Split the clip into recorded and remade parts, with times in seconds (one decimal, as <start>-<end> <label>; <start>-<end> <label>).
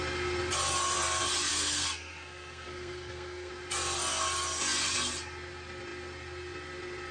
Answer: 0.0-1.5 recorded; 1.5-3.5 remade; 3.5-7.1 recorded